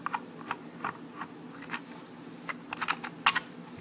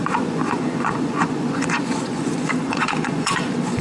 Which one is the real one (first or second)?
first